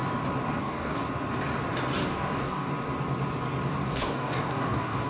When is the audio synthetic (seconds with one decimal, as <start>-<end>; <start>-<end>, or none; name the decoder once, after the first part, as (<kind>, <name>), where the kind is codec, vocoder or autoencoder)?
0.6-1.0 (codec, DAC); 2.2-2.7; 3.7-5.1

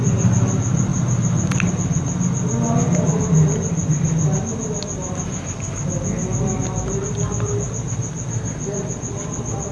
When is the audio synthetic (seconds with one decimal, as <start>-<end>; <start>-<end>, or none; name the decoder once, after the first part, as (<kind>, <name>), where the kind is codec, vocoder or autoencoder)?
none

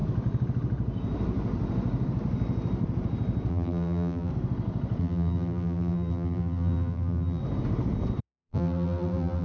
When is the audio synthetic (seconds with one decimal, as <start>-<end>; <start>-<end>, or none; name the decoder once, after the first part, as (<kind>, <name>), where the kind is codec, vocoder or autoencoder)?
3.5-4.3 (vocoder, BigVGAN v2); 5.0-7.4; 8.2-9.4

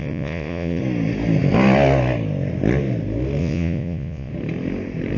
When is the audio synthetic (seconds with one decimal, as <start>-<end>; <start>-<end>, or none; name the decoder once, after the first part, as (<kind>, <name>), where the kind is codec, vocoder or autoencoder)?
0.0-0.8 (vocoder, Vocos); 3.4-4.3

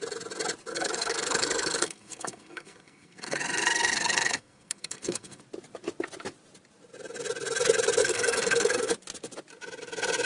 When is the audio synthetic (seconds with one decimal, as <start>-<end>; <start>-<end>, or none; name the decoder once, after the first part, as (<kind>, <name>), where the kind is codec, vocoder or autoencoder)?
0.7-5.4 (codec, SNAC); 8.0-8.9

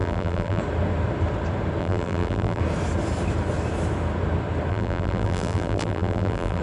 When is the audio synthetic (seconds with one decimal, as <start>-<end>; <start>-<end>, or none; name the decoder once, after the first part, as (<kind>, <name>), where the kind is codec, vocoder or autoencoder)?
0.0-0.6 (vocoder, BigVGAN v2); 1.8-2.6; 4.7-6.6

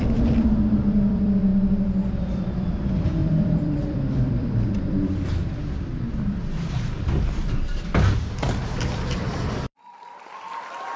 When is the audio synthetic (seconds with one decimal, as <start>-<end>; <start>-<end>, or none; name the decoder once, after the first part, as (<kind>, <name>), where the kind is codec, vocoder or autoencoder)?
0.0-1.5 (vocoder, BigVGAN v2); 2.1-11.0